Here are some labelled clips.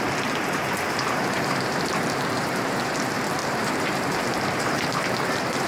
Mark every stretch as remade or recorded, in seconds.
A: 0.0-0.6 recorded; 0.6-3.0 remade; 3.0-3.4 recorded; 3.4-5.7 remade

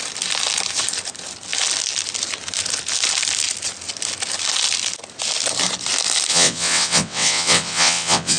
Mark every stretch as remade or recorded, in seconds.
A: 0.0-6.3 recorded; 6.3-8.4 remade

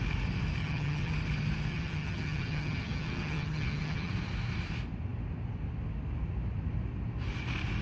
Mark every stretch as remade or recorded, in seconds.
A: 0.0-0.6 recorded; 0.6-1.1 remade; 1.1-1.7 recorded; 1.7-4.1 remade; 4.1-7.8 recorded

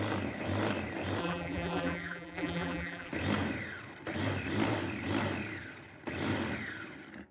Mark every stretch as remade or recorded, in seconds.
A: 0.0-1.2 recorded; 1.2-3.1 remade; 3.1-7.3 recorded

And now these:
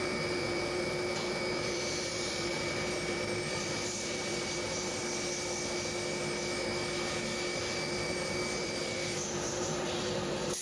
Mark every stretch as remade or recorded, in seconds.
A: 0.0-5.0 remade; 5.0-7.6 recorded; 7.6-10.6 remade

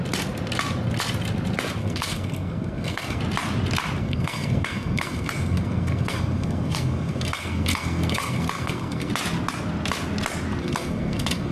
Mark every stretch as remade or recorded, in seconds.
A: 0.0-1.8 recorded; 1.8-3.2 remade; 3.2-4.0 recorded; 4.0-9.1 remade; 9.1-10.6 recorded; 10.6-11.5 remade

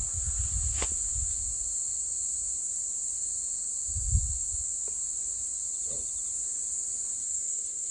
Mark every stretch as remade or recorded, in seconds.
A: 0.0-7.2 recorded; 7.2-7.9 remade

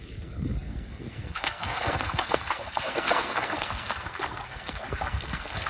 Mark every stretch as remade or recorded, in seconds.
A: 0.0-5.7 remade